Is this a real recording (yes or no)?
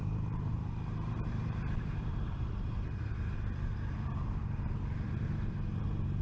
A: no